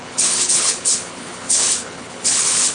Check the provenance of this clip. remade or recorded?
remade